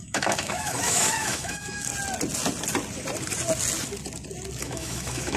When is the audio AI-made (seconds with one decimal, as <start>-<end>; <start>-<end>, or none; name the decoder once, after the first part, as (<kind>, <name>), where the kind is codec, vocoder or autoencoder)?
0.0-1.9 (autoencoder, DAC-VAE); 4.6-5.4